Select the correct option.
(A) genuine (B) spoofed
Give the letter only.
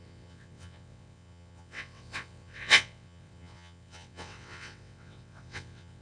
B